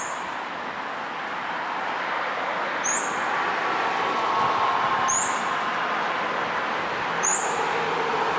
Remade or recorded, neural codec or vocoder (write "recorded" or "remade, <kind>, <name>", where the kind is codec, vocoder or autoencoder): recorded